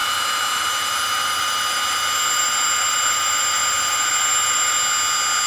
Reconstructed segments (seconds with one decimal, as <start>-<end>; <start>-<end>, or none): 0.0-4.8